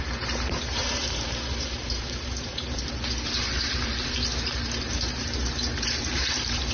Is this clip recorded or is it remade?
remade